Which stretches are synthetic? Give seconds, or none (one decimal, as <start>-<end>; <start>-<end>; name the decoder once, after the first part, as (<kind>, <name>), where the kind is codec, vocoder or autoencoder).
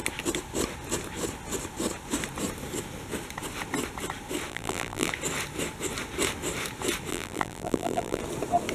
4.5-5.1 (vocoder, BigVGAN v2); 7.1-8.2